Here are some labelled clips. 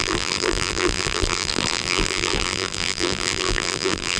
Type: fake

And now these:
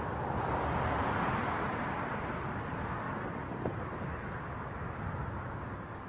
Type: real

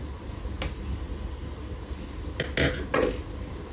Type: real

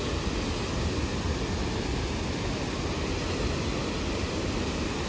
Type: real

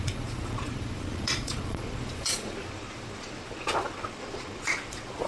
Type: fake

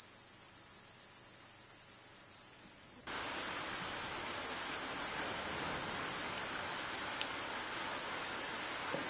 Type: real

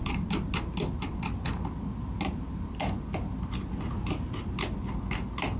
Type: real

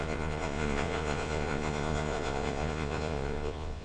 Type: fake